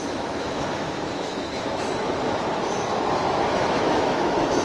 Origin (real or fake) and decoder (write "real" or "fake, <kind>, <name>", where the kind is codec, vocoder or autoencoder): fake, autoencoder, DAC-VAE